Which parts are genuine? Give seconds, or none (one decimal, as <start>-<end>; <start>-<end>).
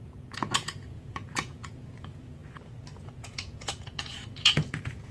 2.4-3.0